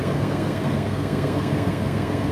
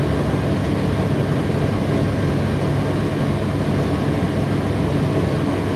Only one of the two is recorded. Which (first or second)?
second